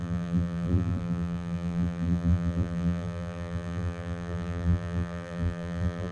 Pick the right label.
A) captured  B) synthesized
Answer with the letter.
B